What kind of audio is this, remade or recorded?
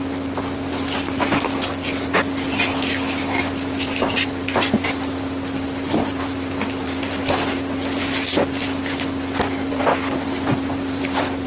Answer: recorded